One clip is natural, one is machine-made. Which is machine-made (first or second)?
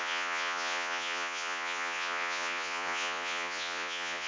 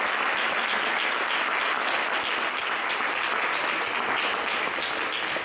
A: first